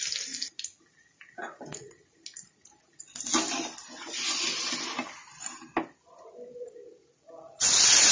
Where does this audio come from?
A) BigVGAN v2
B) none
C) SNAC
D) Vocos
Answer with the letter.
B